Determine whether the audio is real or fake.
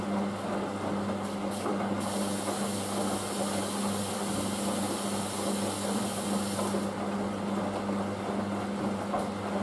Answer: real